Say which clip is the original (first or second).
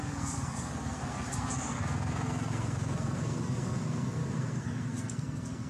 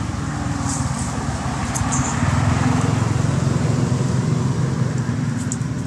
second